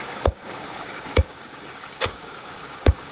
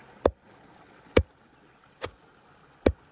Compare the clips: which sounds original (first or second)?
second